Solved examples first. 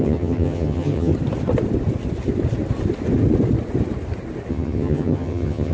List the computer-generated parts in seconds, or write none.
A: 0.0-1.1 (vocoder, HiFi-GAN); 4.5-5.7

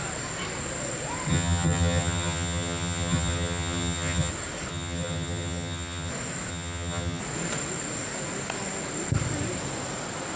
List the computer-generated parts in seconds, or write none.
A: 1.3-4.3 (vocoder, HiFi-GAN); 4.7-6.1; 6.5-7.2

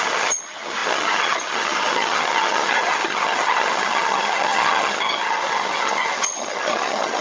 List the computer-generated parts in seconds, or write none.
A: 0.0-7.2 (vocoder, HiFi-GAN)

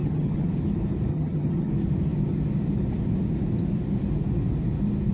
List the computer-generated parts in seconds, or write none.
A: 0.0-0.5 (vocoder, HiFi-GAN); 1.1-1.7

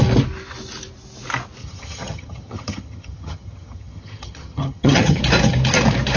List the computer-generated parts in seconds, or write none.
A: 1.6-5.2 (vocoder, HiFi-GAN)

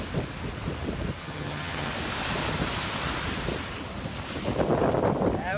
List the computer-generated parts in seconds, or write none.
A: 1.2-1.9 (vocoder, HiFi-GAN)

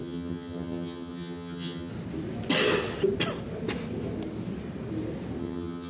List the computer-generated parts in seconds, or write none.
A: 0.0-1.9 (vocoder, HiFi-GAN); 5.4-5.9

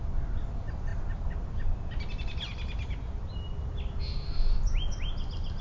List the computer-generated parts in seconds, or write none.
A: none